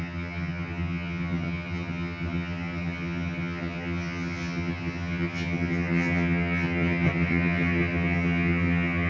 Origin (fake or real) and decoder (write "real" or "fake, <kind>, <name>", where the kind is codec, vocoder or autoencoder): fake, vocoder, HiFi-GAN